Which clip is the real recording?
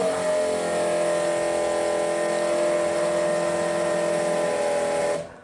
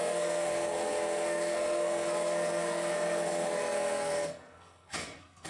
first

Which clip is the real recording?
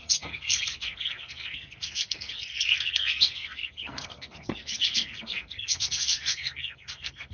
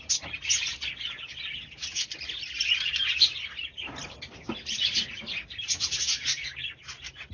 second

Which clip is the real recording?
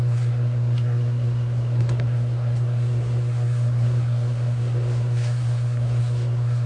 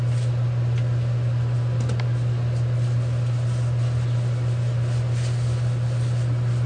second